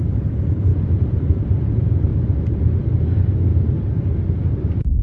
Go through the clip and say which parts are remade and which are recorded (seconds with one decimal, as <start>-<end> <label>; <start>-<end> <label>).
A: 0.0-2.1 remade; 2.1-2.8 recorded; 2.8-3.5 remade; 3.5-4.5 recorded; 4.5-5.0 remade